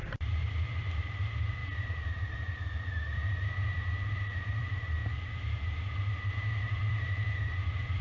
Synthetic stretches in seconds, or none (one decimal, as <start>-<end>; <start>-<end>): 0.0-5.0; 7.4-8.0